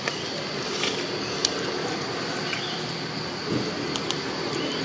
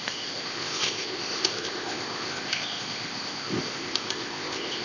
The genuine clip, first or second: first